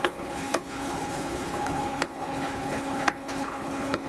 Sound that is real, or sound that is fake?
fake